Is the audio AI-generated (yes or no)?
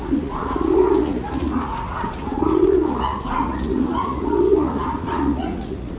yes